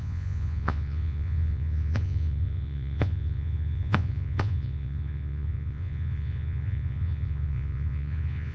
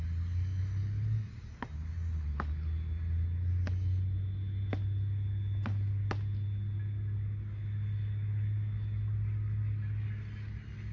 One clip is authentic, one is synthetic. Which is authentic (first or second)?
second